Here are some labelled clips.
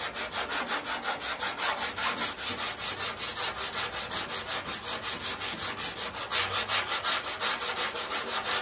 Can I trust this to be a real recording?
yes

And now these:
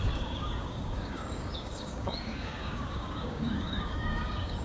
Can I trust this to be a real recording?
no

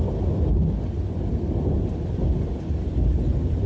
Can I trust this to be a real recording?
yes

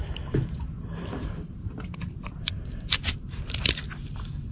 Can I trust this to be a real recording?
no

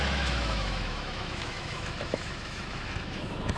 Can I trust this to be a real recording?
no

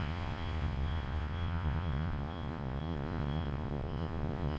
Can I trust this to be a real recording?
no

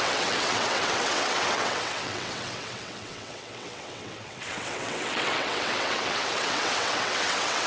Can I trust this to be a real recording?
no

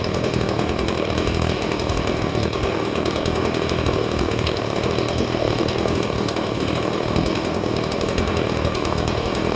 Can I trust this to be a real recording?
no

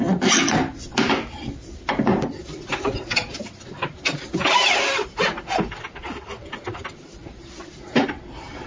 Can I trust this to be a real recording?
yes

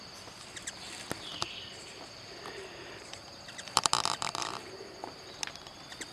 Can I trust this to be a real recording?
no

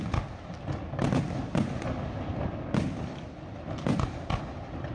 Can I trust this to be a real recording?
yes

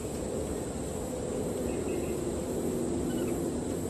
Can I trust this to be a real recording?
no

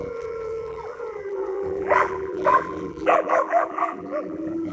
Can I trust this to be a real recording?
no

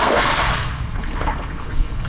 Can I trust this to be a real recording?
no